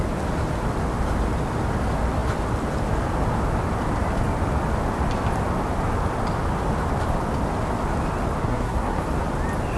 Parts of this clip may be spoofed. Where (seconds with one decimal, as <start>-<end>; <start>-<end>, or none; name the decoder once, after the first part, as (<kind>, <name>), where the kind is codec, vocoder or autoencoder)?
8.4-9.0 (codec, SNAC)